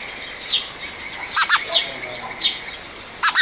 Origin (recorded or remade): recorded